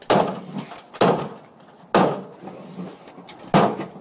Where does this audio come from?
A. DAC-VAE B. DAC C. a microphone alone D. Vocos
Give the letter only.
C